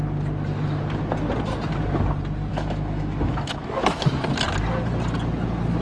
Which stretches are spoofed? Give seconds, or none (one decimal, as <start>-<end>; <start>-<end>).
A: 2.5-4.1